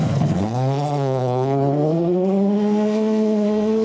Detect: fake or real fake